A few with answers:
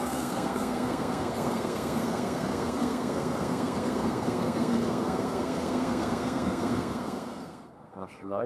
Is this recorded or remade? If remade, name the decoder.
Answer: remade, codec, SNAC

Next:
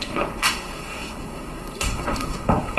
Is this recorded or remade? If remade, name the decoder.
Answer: remade, codec, SNAC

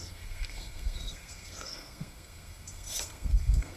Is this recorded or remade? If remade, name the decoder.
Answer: remade, codec, SNAC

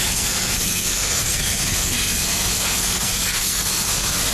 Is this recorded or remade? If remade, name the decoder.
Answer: remade, codec, SNAC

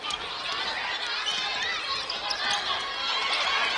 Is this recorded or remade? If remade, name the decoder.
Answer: recorded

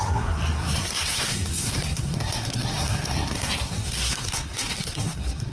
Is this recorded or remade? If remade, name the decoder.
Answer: remade, codec, SNAC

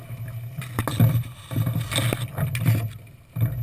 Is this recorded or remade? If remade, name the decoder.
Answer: recorded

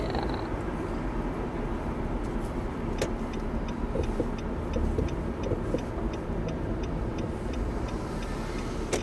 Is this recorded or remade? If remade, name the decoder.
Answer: recorded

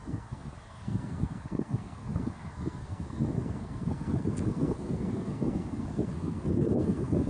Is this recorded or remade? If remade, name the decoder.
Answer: remade, codec, SNAC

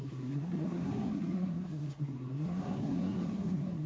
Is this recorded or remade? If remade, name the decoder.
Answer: remade, codec, SNAC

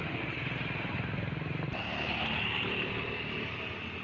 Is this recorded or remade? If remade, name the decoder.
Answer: recorded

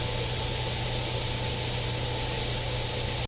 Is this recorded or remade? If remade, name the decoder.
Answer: recorded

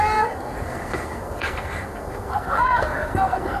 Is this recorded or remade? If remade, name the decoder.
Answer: remade, codec, SNAC